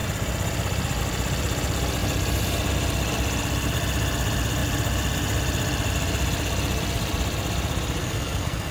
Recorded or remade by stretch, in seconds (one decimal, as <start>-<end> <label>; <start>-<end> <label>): 0.0-8.0 recorded; 8.0-8.7 remade